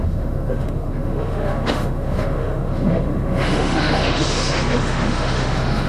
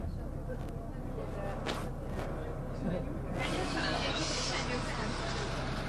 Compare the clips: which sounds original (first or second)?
second